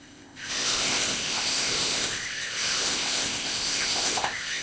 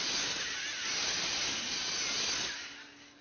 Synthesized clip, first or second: first